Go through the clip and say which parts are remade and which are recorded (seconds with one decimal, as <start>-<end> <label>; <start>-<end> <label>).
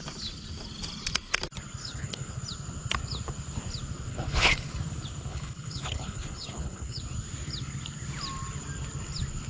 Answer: 0.0-1.8 recorded; 1.8-2.4 remade; 2.4-4.1 recorded; 4.1-4.7 remade; 4.7-5.3 recorded; 5.3-7.0 remade; 7.0-9.5 recorded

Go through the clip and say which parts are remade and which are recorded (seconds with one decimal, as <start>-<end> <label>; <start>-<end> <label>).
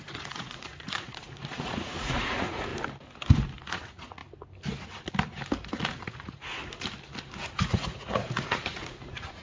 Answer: 0.0-2.7 remade; 2.7-3.6 recorded; 3.6-4.2 remade; 4.2-5.9 recorded; 5.9-6.5 remade; 6.5-7.5 recorded; 7.5-9.4 remade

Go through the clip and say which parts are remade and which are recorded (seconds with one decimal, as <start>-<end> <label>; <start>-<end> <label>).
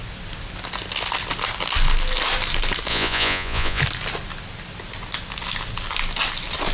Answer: 0.0-2.9 recorded; 2.9-3.8 remade; 3.8-6.7 recorded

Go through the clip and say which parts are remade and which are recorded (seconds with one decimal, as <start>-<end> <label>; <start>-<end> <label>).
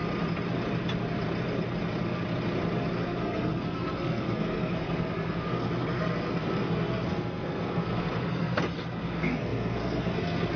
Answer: 0.0-2.9 recorded; 2.9-10.6 remade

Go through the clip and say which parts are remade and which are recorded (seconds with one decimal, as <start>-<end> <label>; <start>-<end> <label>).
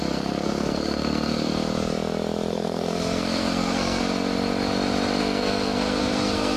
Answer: 0.0-1.5 remade; 1.5-2.5 recorded; 2.5-4.0 remade; 4.0-5.2 recorded; 5.2-6.6 remade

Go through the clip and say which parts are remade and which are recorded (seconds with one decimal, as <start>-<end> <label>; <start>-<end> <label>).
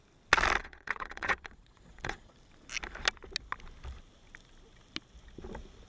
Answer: 0.0-0.6 recorded; 0.6-2.3 remade; 2.3-5.9 recorded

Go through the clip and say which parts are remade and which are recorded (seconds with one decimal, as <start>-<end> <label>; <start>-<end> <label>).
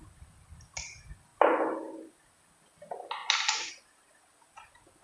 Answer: 0.0-5.0 recorded